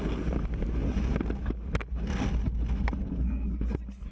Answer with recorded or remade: recorded